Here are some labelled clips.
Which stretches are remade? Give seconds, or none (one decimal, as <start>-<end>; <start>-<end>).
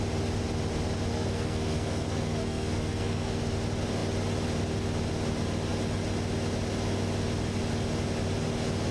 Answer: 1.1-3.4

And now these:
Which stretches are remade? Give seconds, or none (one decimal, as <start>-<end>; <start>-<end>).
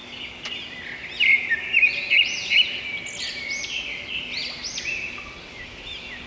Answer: none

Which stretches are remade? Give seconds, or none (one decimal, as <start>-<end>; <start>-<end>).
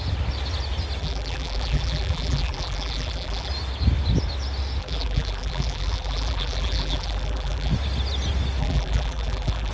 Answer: 1.0-3.5; 4.8-7.7; 8.6-9.7